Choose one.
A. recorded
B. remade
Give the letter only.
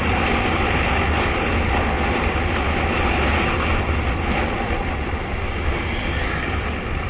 A